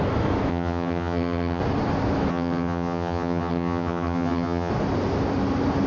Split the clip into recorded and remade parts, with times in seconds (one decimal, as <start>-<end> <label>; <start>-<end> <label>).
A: 0.0-0.5 recorded; 0.5-1.6 remade; 1.6-2.3 recorded; 2.3-4.7 remade; 4.7-5.9 recorded